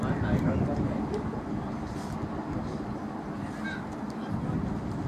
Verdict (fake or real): real